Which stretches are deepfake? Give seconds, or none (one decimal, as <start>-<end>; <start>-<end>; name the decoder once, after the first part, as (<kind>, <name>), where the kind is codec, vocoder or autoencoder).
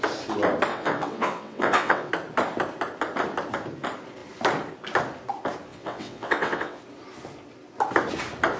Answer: 0.7-2.1 (vocoder, WaveNeXt); 5.7-6.8